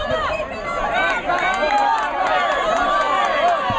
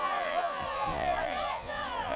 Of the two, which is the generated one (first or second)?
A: second